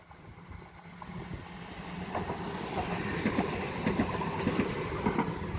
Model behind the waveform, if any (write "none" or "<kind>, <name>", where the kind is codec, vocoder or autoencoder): none